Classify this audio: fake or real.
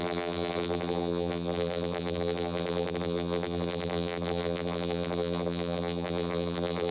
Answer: fake